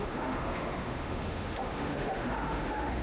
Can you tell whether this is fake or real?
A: fake